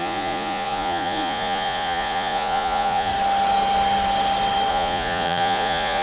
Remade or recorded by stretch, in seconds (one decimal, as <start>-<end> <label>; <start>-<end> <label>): 0.0-3.1 remade; 3.1-4.7 recorded; 4.7-6.0 remade